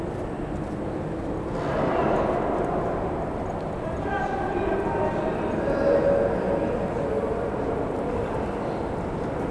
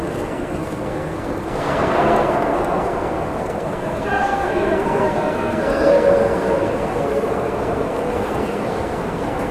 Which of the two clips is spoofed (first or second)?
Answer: second